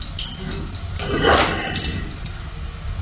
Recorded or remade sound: recorded